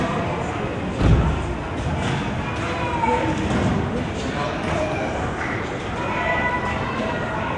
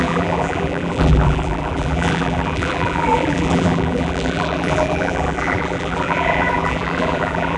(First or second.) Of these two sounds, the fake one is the second